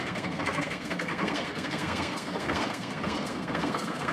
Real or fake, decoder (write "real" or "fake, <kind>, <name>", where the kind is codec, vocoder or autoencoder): fake, codec, SNAC